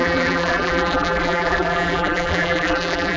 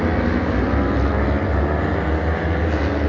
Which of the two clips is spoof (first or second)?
first